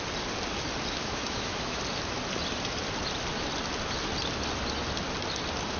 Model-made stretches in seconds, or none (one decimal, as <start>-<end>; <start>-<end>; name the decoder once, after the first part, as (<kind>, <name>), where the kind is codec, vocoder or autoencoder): 1.0-1.8 (autoencoder, DAC-VAE)